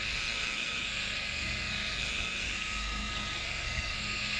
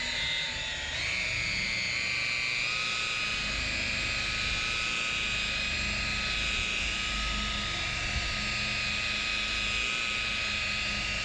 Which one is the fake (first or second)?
first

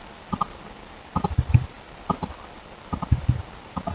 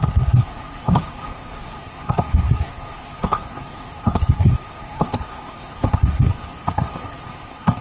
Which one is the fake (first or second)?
second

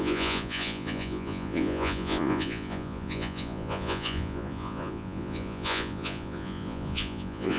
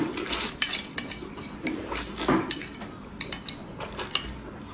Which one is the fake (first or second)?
first